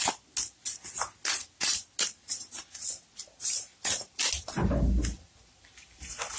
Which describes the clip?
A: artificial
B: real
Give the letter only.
B